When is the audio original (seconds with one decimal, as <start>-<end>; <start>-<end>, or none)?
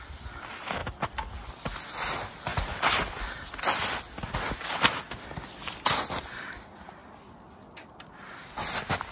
0.0-9.1